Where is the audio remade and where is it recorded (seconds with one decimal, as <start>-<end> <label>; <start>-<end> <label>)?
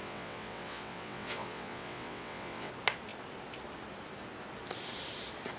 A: 0.0-2.7 remade; 2.7-5.6 recorded